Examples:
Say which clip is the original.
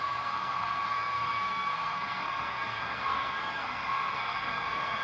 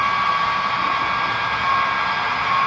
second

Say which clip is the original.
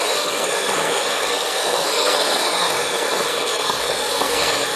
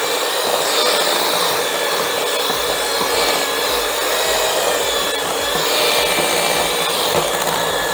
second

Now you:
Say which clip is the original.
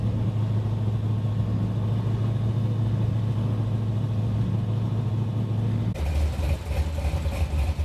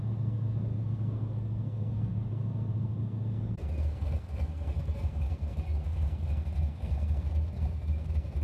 first